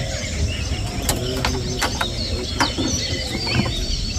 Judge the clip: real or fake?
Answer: real